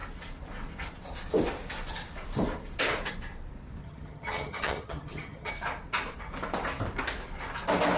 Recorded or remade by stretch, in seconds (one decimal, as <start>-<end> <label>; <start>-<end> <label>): 0.0-3.8 recorded; 3.8-5.5 remade; 5.5-8.0 recorded

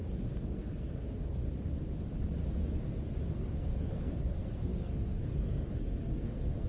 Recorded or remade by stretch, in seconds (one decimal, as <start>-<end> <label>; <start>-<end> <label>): 0.0-1.4 remade; 1.4-3.3 recorded; 3.3-6.7 remade

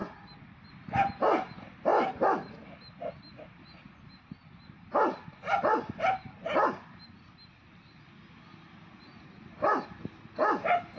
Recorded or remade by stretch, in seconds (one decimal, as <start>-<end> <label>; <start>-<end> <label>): 0.0-11.0 recorded

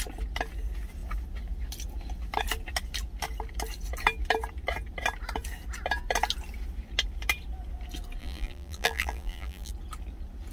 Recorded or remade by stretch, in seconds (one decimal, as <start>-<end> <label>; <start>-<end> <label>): 0.0-8.2 recorded; 8.2-9.7 remade; 9.7-10.5 recorded

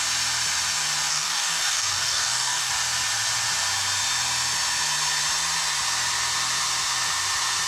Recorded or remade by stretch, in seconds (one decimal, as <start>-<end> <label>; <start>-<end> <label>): 0.0-1.1 recorded; 1.1-2.7 remade; 2.7-7.7 recorded